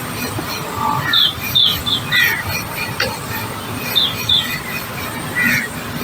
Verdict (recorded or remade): recorded